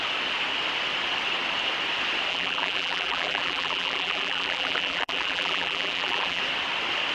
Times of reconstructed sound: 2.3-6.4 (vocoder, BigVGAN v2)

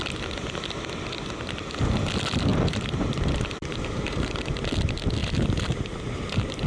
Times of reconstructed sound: 2.5-4.4 (vocoder, BigVGAN v2); 5.2-6.7

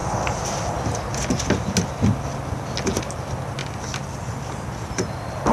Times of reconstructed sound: none